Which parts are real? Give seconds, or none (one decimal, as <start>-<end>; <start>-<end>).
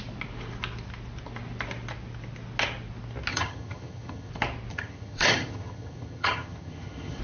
0.0-3.3; 4.3-4.7